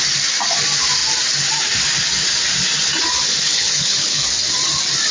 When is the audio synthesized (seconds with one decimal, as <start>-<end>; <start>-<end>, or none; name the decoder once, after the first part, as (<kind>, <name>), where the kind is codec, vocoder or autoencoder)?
3.5-4.3 (codec, HILCodec)